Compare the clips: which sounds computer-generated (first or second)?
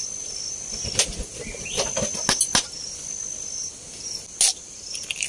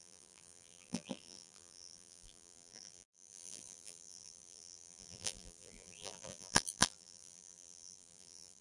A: second